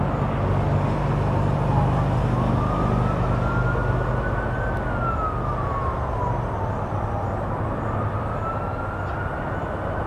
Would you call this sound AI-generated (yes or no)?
no